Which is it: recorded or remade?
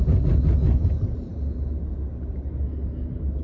recorded